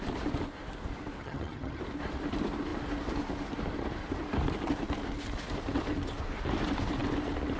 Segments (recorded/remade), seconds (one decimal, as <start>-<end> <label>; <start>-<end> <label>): 0.0-1.2 recorded; 1.2-1.8 remade; 1.8-7.6 recorded